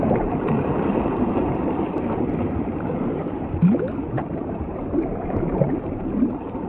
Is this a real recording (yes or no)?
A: no